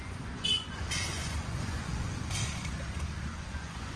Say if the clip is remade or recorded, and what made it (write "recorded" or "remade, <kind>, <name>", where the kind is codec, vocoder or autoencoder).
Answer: remade, vocoder, Vocos